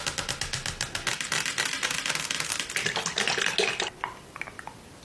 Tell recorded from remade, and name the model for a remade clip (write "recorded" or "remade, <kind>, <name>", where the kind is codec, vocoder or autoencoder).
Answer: recorded